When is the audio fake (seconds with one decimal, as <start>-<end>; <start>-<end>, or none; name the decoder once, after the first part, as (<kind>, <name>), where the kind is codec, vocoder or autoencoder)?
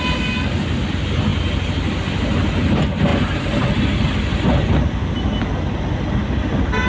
none